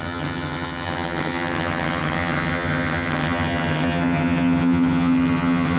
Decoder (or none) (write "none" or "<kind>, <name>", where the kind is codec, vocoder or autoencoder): vocoder, HiFi-GAN